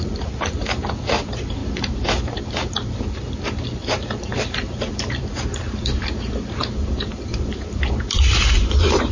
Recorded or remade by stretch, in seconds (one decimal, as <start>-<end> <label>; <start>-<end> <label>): 0.0-9.1 remade